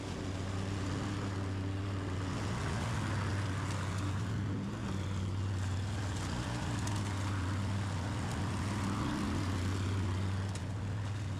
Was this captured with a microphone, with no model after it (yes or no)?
yes